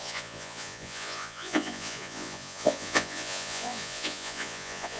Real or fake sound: fake